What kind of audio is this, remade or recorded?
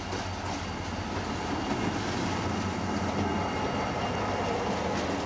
recorded